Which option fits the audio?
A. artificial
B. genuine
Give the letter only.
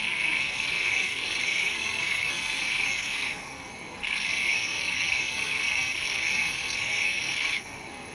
A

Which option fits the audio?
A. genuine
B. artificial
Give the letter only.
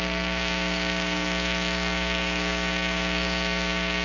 B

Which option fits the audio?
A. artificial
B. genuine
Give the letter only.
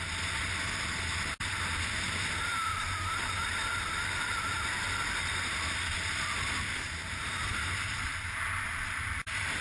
B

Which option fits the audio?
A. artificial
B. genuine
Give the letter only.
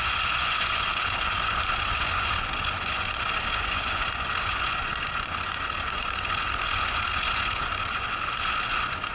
A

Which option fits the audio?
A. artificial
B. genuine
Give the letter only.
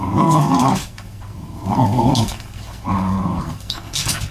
A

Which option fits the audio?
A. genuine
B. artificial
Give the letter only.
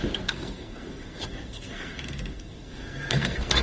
B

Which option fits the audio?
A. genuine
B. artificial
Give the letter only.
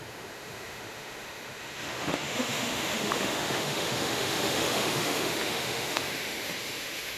B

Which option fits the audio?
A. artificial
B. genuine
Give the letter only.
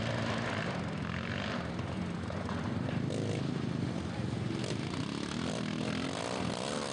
B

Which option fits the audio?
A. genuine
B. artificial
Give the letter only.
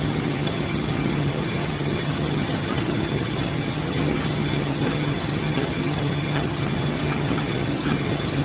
B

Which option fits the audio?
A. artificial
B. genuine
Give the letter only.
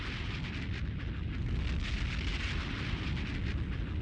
B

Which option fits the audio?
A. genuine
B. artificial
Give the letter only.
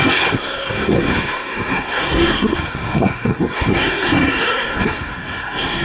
B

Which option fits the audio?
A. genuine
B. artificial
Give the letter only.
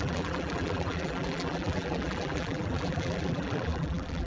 B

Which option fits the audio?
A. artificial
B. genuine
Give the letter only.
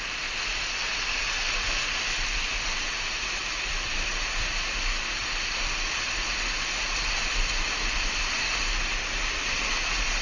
B